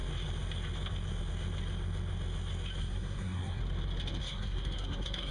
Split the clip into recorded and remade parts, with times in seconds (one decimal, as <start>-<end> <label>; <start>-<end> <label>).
0.0-2.8 recorded; 2.8-3.6 remade; 3.6-4.2 recorded; 4.2-5.3 remade